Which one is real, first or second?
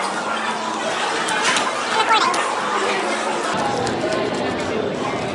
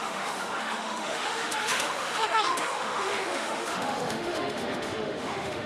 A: first